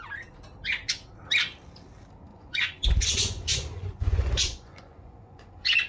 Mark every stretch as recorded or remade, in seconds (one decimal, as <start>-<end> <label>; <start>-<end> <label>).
0.0-2.3 recorded; 2.3-5.9 remade